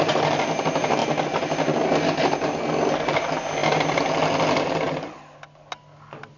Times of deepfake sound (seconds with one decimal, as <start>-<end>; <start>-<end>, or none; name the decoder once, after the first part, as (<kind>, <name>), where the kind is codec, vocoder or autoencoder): none